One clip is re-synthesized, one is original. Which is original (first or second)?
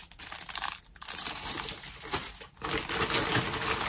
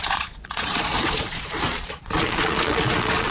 first